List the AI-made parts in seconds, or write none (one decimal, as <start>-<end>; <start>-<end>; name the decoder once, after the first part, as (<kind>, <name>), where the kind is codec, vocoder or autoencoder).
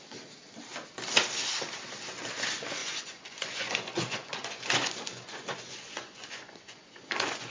2.8-7.5 (vocoder, Vocos)